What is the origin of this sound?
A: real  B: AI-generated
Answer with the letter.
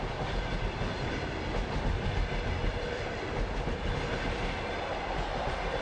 B